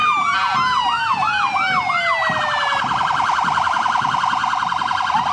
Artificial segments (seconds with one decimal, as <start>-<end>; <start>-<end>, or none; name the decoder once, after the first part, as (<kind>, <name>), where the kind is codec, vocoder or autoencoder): none